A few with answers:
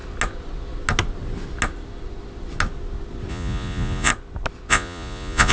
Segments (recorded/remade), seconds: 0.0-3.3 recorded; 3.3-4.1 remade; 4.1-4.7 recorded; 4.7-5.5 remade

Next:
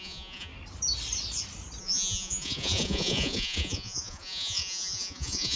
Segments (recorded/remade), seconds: 0.0-0.5 remade; 0.5-1.8 recorded; 1.8-5.6 remade

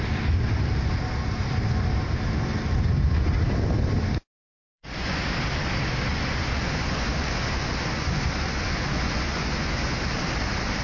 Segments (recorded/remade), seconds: 0.0-4.6 recorded; 4.6-5.2 remade; 5.2-6.1 recorded; 6.1-10.0 remade; 10.0-10.8 recorded

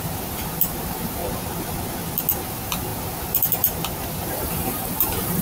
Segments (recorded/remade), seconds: 0.0-1.2 remade; 1.2-2.5 recorded; 2.5-5.4 remade